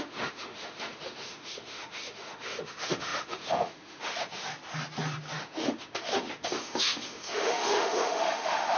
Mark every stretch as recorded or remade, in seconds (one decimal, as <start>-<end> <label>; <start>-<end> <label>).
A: 0.0-4.5 remade; 4.5-5.3 recorded; 5.3-8.8 remade